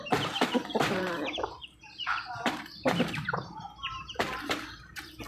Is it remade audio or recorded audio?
remade